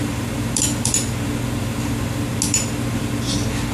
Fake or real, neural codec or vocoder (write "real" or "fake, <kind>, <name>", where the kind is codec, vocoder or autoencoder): real